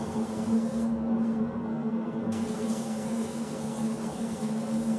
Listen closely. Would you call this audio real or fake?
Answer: fake